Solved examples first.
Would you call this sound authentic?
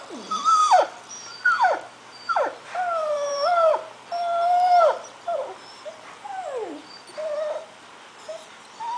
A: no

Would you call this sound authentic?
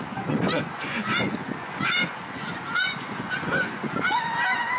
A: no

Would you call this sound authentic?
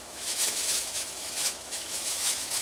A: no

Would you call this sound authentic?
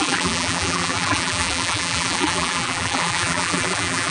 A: no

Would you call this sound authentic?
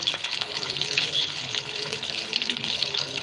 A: no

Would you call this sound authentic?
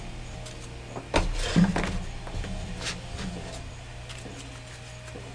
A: yes